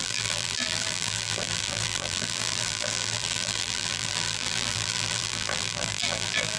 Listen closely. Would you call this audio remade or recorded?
remade